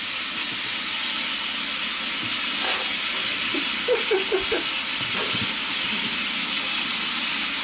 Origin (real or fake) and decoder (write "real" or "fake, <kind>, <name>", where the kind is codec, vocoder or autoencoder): real